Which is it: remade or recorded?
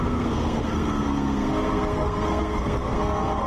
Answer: remade